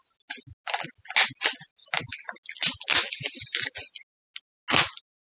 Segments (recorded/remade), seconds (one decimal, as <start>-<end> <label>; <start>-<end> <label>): 0.0-5.4 recorded